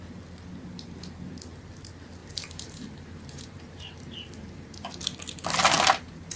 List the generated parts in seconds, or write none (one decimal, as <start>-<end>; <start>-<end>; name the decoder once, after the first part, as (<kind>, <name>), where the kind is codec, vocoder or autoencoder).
2.2-5.0 (vocoder, BigVGAN v2)